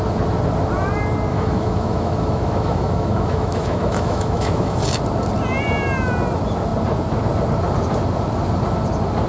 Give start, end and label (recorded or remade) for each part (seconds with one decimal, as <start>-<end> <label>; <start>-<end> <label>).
0.0-1.3 recorded; 1.3-4.8 remade; 4.8-9.3 recorded

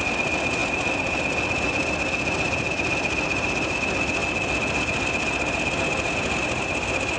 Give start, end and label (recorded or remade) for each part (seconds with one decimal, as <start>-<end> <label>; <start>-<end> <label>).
0.0-7.2 recorded

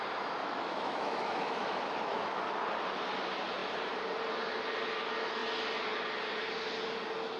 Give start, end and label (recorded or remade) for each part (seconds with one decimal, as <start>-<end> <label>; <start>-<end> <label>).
0.0-0.4 recorded; 0.4-2.4 remade; 2.4-7.4 recorded

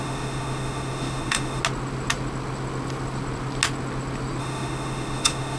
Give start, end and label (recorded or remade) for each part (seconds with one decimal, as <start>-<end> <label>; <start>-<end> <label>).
0.0-1.6 remade; 1.6-4.4 recorded; 4.4-5.6 remade

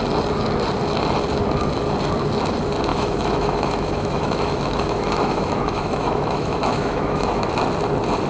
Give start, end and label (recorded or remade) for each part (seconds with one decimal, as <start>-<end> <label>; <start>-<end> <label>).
0.0-2.9 recorded; 2.9-7.5 remade; 7.5-8.3 recorded